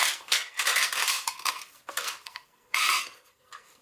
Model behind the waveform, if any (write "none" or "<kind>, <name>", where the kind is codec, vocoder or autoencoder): codec, SNAC